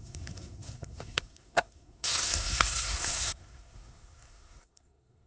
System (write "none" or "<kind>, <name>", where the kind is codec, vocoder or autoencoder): codec, SNAC